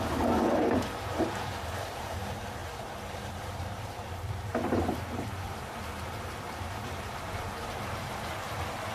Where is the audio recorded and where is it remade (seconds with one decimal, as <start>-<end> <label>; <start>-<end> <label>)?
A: 0.0-2.6 remade; 2.6-3.2 recorded; 3.2-8.9 remade